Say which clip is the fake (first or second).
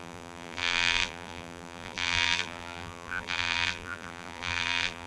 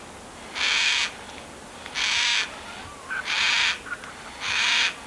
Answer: first